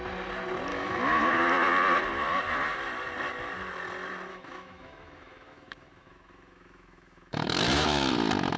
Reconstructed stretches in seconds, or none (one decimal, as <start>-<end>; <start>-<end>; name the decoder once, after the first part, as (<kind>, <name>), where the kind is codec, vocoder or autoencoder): 0.7-1.3 (autoencoder, DAC-VAE); 4.3-8.1